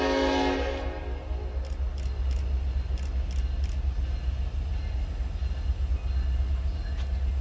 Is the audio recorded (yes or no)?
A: yes